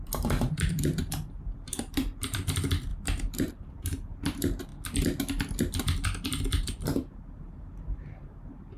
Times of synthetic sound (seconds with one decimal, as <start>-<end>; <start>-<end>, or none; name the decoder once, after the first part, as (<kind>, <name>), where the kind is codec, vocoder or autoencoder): 0.0-4.7 (vocoder, BigVGAN v2); 5.8-8.8